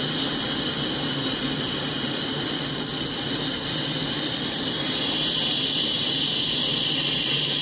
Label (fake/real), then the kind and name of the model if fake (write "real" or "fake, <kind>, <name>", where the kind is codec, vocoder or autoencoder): real